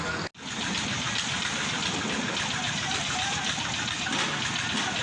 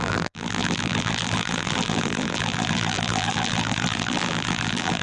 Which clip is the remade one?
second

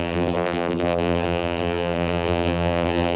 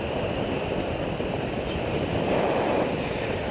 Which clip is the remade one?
first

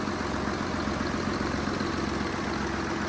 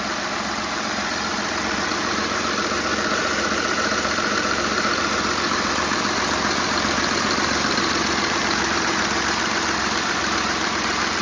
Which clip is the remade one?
second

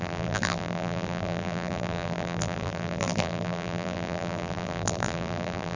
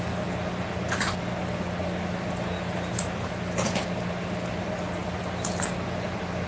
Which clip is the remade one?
first